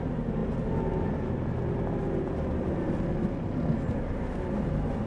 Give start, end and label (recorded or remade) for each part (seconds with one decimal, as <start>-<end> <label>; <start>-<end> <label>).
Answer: 0.0-5.1 recorded